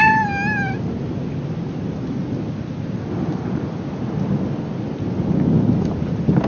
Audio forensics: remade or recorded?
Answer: recorded